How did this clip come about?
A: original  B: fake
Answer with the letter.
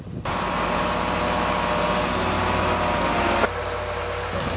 A